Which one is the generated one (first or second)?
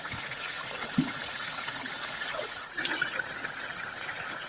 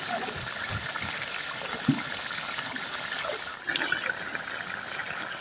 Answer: first